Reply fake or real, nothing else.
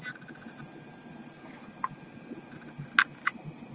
real